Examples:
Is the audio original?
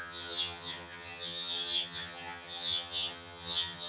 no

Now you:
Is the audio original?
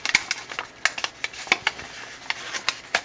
yes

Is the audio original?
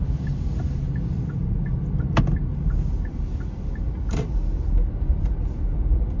yes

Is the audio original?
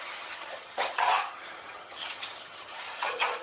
no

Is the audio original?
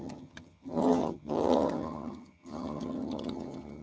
no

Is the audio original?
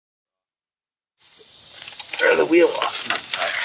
yes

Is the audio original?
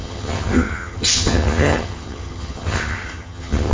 no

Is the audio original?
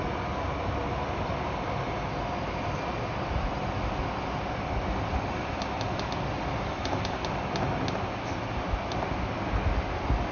yes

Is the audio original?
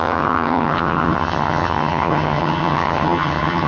no